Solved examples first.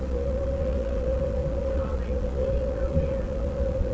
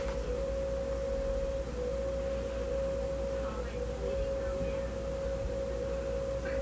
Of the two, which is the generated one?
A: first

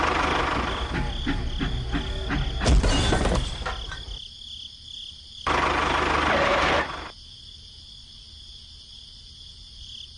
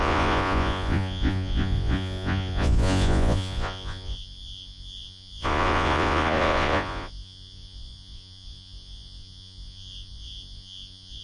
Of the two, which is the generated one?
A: second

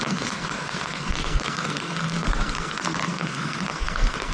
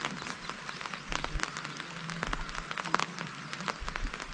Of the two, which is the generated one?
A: first